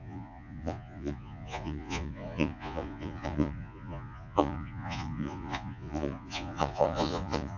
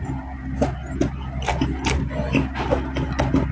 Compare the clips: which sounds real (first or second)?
second